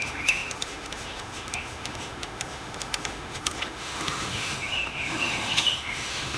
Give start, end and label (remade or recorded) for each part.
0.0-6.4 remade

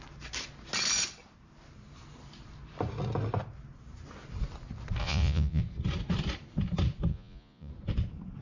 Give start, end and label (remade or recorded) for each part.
0.0-5.0 recorded; 5.0-5.6 remade; 5.6-7.1 recorded; 7.1-7.7 remade; 7.7-8.4 recorded

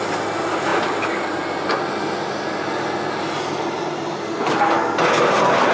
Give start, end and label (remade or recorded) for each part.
0.0-5.7 recorded

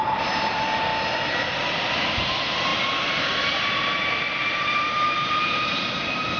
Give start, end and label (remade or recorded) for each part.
0.0-0.9 remade; 0.9-1.7 recorded; 1.7-6.4 remade

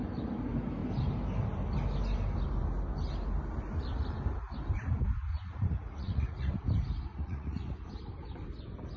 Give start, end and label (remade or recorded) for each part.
0.0-5.3 recorded; 5.3-6.5 remade; 6.5-7.1 recorded; 7.1-7.7 remade; 7.7-9.0 recorded

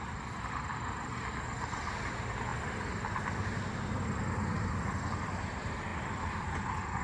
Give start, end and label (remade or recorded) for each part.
0.0-7.0 recorded